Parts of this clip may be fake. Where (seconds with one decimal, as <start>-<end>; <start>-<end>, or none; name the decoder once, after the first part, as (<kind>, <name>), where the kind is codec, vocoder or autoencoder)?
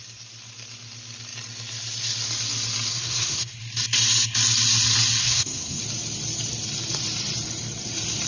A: 2.9-3.6 (codec, SNAC); 5.2-5.8